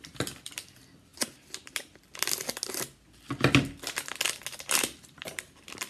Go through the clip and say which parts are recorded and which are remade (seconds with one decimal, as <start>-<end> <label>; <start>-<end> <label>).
0.0-1.1 remade; 1.1-4.6 recorded; 4.6-5.9 remade